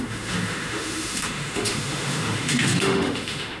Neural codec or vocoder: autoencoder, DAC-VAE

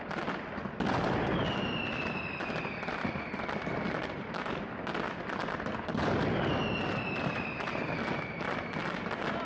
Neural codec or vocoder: none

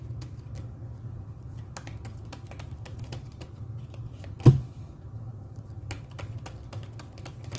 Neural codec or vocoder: none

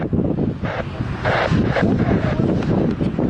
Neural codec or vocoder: none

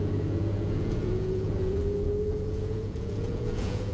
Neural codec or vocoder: vocoder, Vocos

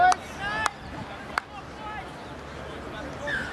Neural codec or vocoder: none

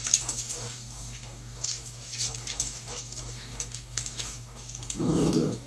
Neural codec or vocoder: codec, DAC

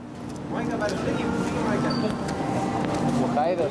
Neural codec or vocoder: none